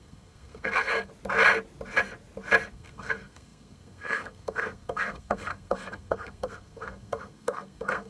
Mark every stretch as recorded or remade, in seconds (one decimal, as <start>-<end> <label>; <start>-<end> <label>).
0.0-1.1 remade; 1.1-2.7 recorded; 2.7-8.1 remade